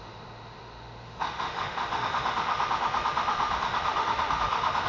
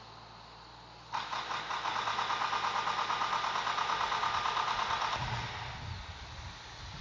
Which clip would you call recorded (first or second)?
second